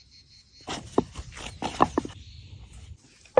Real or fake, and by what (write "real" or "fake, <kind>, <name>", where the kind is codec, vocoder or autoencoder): real